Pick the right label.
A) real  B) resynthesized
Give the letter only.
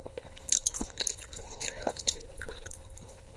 B